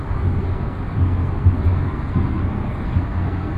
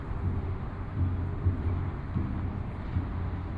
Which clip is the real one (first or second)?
second